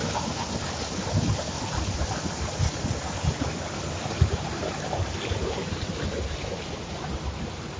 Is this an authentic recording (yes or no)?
yes